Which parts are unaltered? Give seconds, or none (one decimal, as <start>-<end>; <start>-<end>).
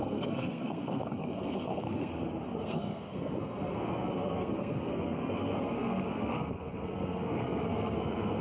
2.1-2.6